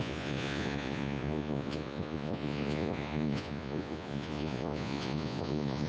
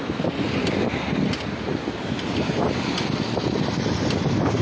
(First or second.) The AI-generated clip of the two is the first